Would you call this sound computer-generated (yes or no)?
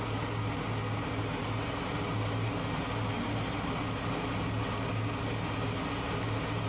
no